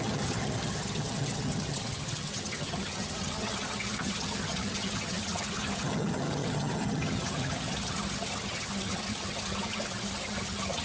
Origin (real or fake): fake